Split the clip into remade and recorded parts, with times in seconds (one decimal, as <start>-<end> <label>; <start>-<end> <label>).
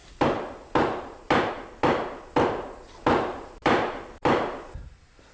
0.0-5.3 recorded